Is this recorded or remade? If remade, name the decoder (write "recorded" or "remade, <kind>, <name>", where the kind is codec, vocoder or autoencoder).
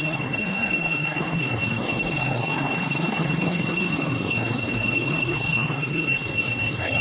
remade, codec, SNAC